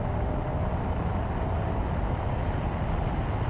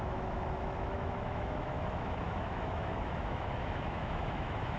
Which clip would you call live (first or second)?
first